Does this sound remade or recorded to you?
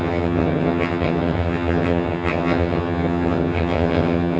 remade